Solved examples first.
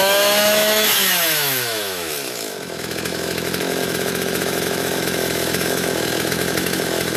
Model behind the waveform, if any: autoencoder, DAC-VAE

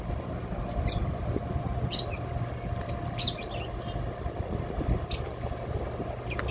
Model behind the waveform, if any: none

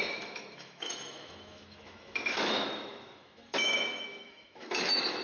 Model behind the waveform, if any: autoencoder, DAC-VAE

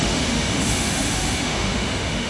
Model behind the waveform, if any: autoencoder, DAC-VAE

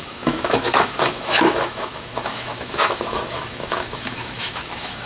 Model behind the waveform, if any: autoencoder, DAC-VAE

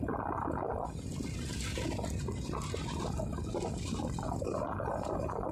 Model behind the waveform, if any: none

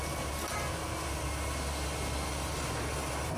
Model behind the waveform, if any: none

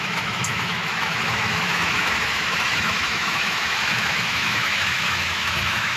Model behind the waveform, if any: autoencoder, DAC-VAE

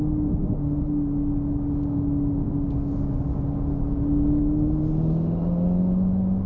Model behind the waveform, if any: none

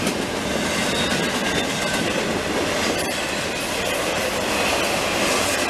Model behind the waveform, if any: none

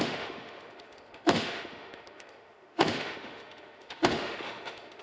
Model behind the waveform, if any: autoencoder, DAC-VAE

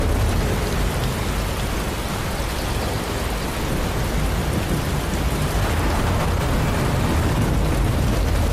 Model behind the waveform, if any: none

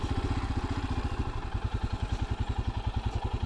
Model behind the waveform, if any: none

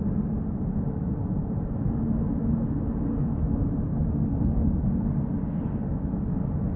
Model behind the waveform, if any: none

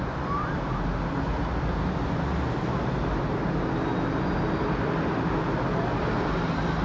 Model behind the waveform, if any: none